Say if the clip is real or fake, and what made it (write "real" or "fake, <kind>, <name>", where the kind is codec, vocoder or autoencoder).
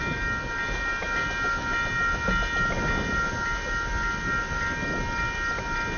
real